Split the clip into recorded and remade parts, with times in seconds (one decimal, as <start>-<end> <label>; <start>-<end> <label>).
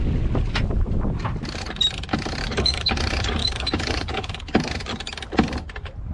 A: 0.0-2.4 recorded; 2.4-2.9 remade; 2.9-3.4 recorded; 3.4-4.4 remade; 4.4-6.1 recorded